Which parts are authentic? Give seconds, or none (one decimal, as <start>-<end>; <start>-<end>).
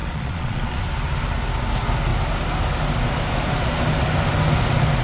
0.8-5.0